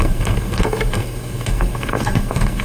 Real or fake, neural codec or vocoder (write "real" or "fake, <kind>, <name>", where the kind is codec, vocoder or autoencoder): fake, codec, SNAC